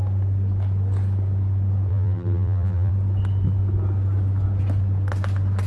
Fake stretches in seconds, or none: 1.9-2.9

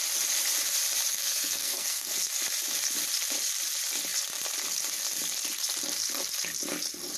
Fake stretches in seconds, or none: 1.1-2.3